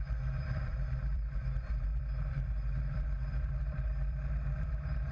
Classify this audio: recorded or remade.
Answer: remade